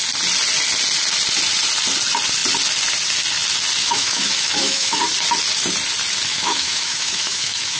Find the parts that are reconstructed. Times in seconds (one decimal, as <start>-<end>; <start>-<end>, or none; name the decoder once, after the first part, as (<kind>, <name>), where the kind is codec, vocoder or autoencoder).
3.8-5.0 (autoencoder, DAC-VAE); 6.3-7.8